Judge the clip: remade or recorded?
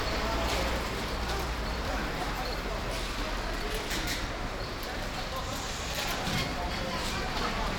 remade